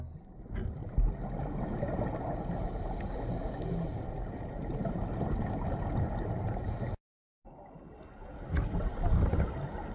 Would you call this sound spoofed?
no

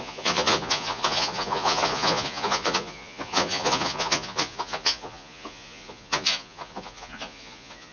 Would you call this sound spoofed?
yes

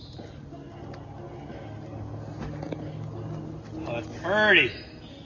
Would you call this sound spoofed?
no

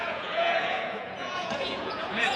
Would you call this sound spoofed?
yes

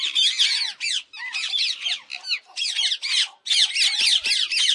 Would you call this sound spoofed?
no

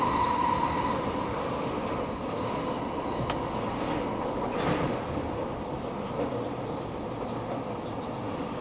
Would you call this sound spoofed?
no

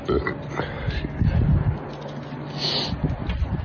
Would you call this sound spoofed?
no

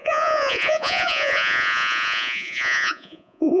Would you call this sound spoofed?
yes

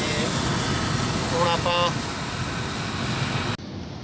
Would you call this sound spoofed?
no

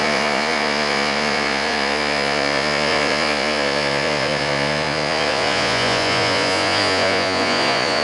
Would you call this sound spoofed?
yes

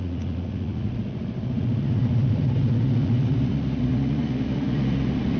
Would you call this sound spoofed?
yes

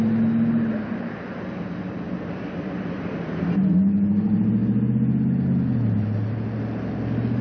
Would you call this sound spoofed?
no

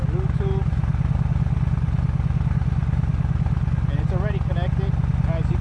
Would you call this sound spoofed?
no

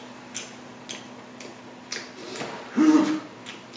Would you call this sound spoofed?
no